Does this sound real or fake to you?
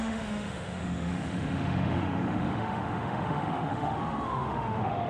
fake